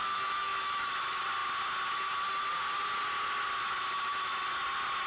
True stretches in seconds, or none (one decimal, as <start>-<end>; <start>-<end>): 0.9-5.1